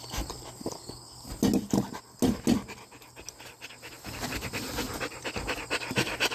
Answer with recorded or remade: recorded